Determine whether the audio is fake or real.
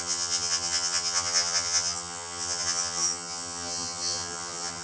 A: fake